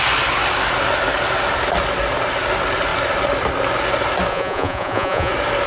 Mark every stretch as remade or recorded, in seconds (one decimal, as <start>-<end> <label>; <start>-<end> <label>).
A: 0.0-4.3 recorded; 4.3-5.3 remade; 5.3-5.7 recorded